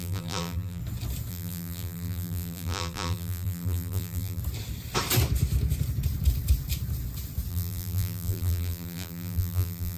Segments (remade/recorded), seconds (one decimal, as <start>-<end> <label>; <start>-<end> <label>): 0.0-0.8 remade; 0.8-1.3 recorded; 1.3-4.4 remade; 4.4-7.5 recorded; 7.5-10.0 remade